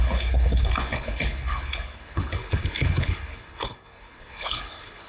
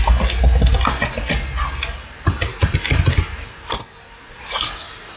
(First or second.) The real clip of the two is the second